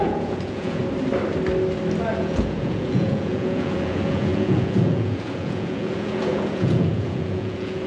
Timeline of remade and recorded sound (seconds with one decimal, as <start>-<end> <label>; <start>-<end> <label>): 0.0-0.8 remade; 0.8-2.1 recorded; 2.1-7.9 remade